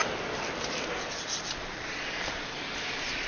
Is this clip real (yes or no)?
no